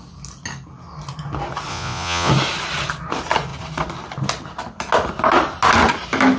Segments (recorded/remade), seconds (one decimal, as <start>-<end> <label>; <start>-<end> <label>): 0.0-1.7 recorded; 1.7-2.3 remade; 2.3-6.4 recorded